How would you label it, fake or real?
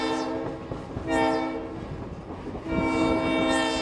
real